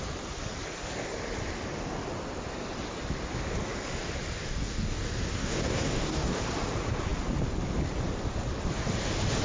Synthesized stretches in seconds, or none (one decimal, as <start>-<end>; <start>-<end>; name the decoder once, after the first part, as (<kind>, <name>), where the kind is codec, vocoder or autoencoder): 4.4-5.0 (codec, DAC); 5.4-6.4